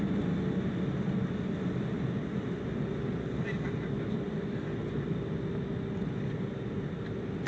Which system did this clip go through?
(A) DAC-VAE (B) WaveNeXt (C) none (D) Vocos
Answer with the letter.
C